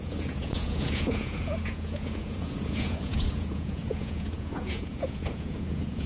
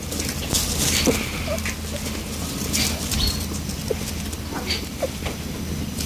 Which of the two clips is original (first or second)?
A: second